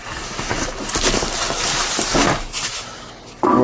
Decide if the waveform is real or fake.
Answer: real